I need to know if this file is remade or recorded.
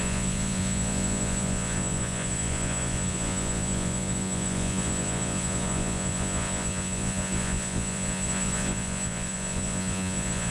remade